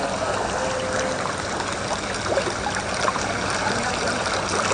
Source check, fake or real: real